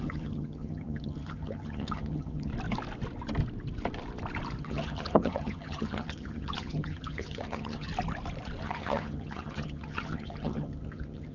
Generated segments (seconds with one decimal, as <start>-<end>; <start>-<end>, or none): 0.0-2.5; 4.6-7.9; 8.6-11.3